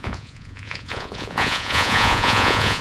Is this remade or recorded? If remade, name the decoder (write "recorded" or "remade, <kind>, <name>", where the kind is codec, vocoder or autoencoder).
remade, vocoder, Vocos